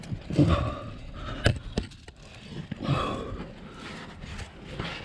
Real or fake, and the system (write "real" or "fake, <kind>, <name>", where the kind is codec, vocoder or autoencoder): real